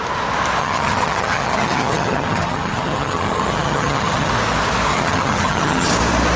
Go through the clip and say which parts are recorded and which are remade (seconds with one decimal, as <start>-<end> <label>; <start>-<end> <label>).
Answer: 0.0-0.6 recorded; 0.6-4.3 remade; 4.3-4.9 recorded; 4.9-5.9 remade; 5.9-6.4 recorded

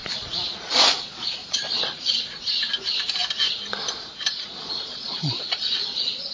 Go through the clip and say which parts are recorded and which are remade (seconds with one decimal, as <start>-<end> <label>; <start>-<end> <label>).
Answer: 0.0-2.6 remade; 2.6-4.4 recorded; 4.4-6.3 remade

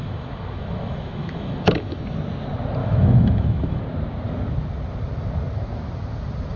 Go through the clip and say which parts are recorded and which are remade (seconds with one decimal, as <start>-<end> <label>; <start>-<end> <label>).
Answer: 0.0-2.0 remade; 2.0-2.8 recorded; 2.8-3.8 remade; 3.8-6.6 recorded

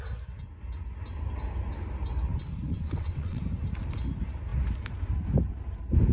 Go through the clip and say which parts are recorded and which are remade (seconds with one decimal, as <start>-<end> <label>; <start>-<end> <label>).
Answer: 0.0-2.7 recorded; 2.7-3.4 remade; 3.4-6.1 recorded

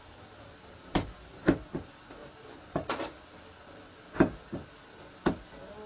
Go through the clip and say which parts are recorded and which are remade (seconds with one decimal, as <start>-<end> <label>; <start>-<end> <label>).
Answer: 0.0-5.9 recorded

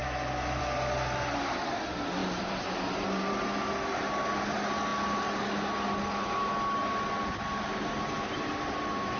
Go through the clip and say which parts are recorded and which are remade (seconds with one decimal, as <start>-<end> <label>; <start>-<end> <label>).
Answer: 0.0-0.6 remade; 0.6-9.2 recorded